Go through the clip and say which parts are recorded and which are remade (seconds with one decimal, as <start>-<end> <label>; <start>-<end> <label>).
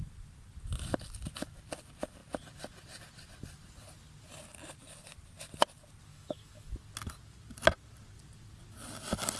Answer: 0.0-6.1 recorded; 6.1-6.7 remade; 6.7-9.4 recorded